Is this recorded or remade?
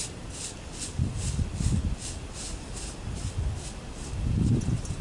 recorded